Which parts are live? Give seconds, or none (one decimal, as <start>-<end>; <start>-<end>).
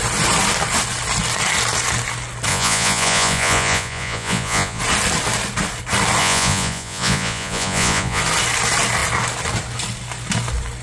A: 0.0-2.5; 4.8-6.2; 8.2-10.8